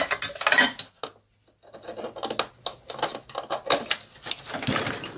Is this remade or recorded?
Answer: recorded